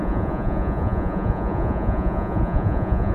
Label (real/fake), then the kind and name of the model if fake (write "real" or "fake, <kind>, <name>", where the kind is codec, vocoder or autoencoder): fake, vocoder, Vocos